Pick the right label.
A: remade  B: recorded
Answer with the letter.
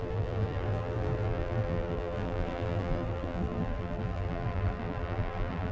A